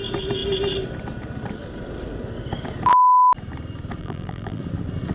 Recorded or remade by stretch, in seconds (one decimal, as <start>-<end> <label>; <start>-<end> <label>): 0.0-4.0 recorded; 4.0-4.6 remade; 4.6-5.1 recorded